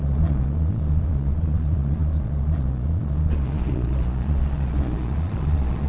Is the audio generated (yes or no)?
yes